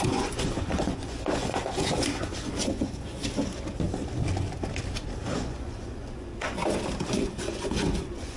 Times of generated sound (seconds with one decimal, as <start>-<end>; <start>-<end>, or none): 0.0-3.2; 5.3-6.6; 7.1-8.4